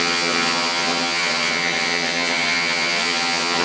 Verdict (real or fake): fake